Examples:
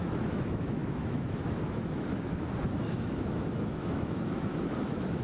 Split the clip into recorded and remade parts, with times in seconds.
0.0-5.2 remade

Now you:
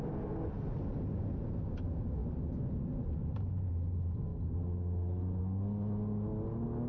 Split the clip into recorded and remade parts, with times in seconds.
0.0-6.9 recorded

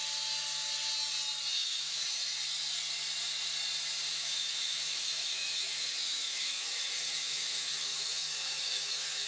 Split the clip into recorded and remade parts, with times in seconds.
0.0-1.5 recorded; 1.5-2.3 remade; 2.3-4.1 recorded; 4.1-9.3 remade

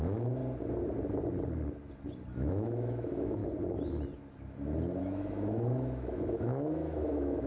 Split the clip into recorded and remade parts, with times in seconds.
0.0-0.4 remade; 0.4-2.5 recorded; 2.5-3.4 remade; 3.4-5.0 recorded; 5.0-7.5 remade

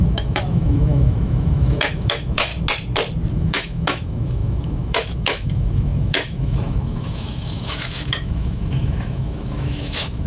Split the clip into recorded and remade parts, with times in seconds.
0.0-2.5 remade; 2.5-3.3 recorded; 3.3-10.3 remade